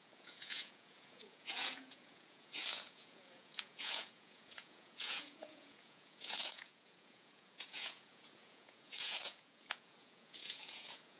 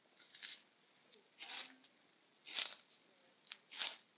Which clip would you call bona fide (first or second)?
second